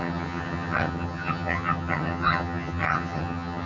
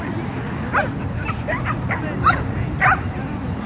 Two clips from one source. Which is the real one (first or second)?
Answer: second